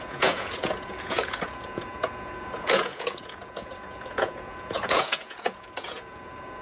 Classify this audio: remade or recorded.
remade